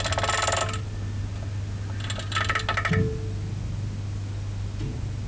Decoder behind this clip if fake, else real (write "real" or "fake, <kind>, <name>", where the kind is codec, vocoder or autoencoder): real